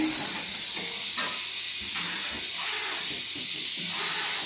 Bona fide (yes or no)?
yes